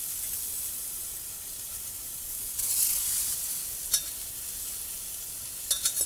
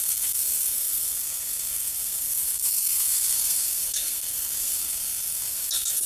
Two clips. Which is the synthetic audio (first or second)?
second